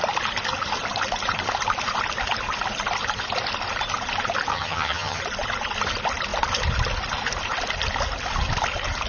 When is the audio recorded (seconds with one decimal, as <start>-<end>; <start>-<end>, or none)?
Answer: 0.0-4.5; 5.2-9.1